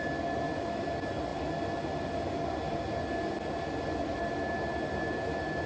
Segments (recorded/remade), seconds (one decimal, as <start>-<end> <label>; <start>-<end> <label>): 0.0-5.7 recorded